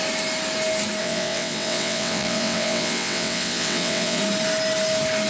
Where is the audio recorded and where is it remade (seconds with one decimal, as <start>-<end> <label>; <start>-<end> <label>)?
0.0-1.0 recorded; 1.0-4.2 remade; 4.2-5.3 recorded